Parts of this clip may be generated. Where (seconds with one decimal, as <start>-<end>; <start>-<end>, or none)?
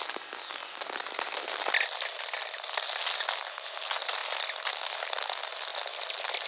0.6-2.9